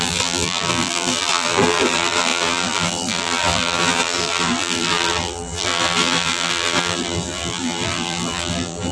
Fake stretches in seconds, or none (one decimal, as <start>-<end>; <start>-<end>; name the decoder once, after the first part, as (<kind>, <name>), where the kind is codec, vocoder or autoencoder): 0.0-8.9 (vocoder, BigVGAN v2)